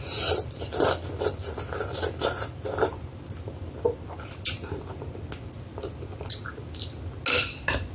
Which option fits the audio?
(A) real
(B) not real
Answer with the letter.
A